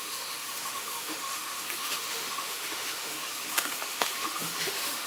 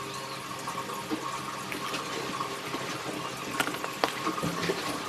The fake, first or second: first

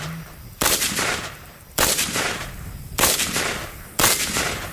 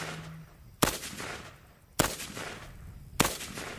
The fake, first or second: first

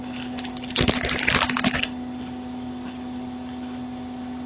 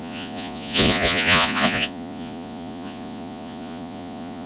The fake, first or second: second